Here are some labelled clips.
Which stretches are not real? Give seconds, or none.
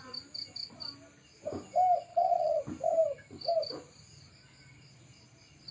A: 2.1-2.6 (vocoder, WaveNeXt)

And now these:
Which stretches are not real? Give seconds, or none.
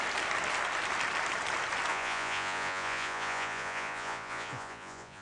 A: 1.9-5.2 (vocoder, Vocos)